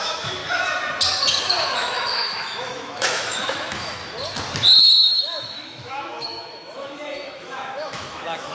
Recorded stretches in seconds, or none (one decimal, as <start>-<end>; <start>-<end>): 0.4-1.4; 4.0-4.8